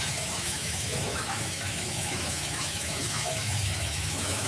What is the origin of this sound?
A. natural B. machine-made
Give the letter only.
B